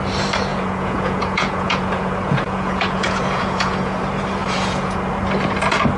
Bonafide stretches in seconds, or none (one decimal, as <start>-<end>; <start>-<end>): 0.0-0.5; 4.0-4.4; 5.1-6.0